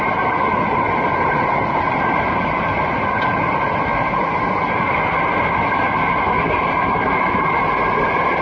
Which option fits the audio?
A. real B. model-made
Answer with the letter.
A